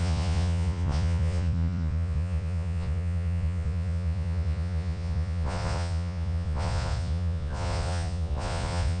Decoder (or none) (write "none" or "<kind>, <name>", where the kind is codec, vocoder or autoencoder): vocoder, Vocos